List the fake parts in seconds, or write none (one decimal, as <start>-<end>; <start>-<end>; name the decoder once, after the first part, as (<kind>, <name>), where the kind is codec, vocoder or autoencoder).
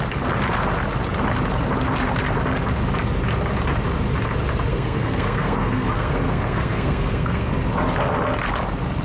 4.7-7.5 (codec, SNAC)